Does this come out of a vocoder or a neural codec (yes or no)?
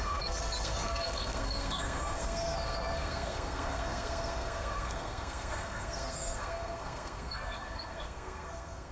yes